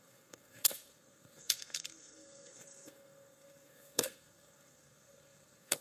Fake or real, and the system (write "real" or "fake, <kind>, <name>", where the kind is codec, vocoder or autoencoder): fake, codec, SNAC